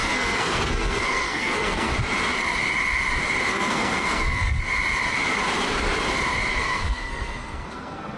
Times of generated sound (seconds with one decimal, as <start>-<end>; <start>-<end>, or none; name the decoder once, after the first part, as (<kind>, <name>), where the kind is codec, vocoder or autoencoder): 0.0-1.9 (codec, SNAC); 3.5-4.6; 6.5-8.2